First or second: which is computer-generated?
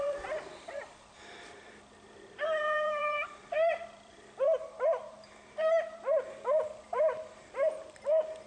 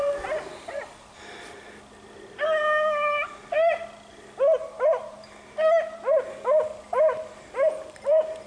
first